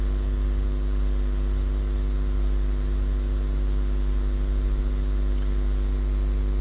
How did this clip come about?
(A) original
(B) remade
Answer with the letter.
A